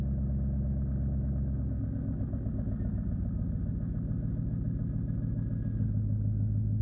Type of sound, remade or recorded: recorded